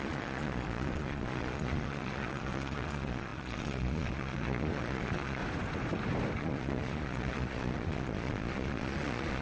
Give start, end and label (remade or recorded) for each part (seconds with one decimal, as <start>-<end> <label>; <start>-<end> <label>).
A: 0.0-5.4 remade; 5.4-6.4 recorded; 6.4-9.4 remade